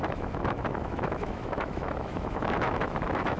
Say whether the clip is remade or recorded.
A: remade